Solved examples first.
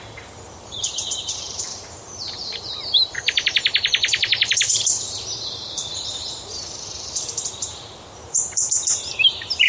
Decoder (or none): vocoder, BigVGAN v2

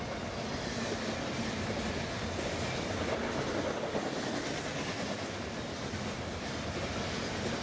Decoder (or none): none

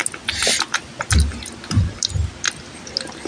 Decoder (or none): none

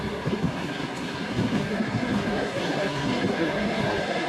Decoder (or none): codec, SNAC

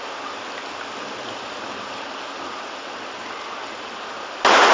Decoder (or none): none